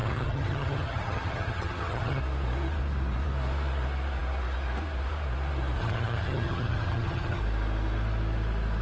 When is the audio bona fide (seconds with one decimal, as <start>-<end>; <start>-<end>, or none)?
2.2-5.8; 7.4-8.8